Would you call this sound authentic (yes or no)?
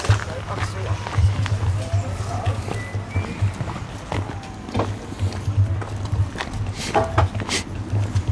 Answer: yes